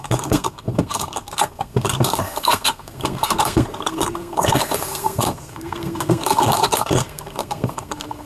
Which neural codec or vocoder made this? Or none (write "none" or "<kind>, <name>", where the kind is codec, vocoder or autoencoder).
codec, SNAC